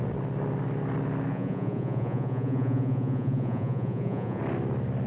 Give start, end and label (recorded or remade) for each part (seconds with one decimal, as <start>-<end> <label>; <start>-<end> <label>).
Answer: 0.0-1.3 recorded; 1.3-4.4 remade; 4.4-5.1 recorded